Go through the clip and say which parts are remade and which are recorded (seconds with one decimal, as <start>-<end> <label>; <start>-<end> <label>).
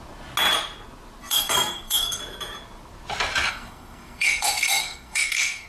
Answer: 0.0-1.2 recorded; 1.2-2.2 remade; 2.2-3.5 recorded; 3.5-5.7 remade